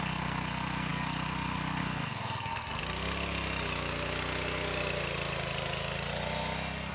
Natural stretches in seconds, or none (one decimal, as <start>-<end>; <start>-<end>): 2.8-6.9